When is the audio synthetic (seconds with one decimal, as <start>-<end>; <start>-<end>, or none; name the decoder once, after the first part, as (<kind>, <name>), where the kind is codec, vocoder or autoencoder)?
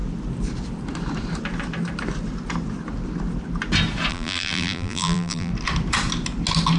4.1-5.5 (vocoder, BigVGAN v2)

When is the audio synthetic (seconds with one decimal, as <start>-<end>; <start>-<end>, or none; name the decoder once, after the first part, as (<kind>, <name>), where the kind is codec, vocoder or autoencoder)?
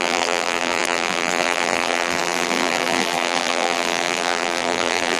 0.0-5.2 (vocoder, BigVGAN v2)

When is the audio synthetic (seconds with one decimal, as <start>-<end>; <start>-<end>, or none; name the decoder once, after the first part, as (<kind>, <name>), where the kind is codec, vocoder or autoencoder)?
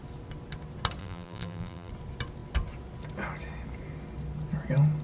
1.0-1.9 (vocoder, BigVGAN v2)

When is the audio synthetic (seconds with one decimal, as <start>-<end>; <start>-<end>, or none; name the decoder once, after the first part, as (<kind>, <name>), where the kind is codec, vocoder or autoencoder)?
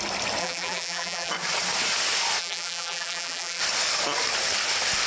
0.4-1.3 (vocoder, BigVGAN v2); 2.4-3.6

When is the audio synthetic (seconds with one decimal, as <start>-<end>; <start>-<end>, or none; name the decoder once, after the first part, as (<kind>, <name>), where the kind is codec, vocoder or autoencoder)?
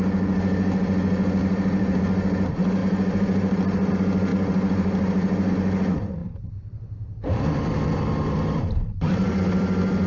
1.4-2.0 (vocoder, BigVGAN v2); 2.8-3.9; 4.3-5.5; 6.2-9.4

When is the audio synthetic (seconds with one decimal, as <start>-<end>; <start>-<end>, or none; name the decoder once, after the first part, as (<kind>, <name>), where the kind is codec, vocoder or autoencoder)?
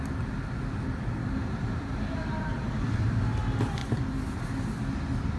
1.2-3.4 (vocoder, BigVGAN v2); 3.8-4.4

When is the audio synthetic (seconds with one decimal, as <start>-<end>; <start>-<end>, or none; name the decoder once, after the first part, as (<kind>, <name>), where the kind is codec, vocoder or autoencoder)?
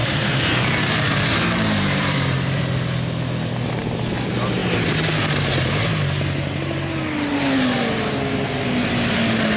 0.0-2.6 (vocoder, BigVGAN v2)